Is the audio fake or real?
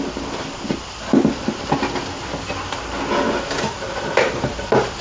real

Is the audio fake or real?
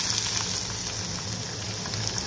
real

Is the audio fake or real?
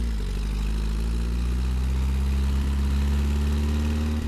real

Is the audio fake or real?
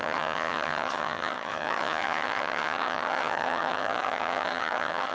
fake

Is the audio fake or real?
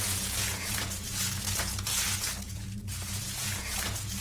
fake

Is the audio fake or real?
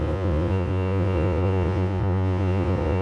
fake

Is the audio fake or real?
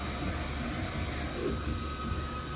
real